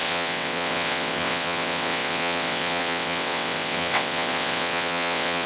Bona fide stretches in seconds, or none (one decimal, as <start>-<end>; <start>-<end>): none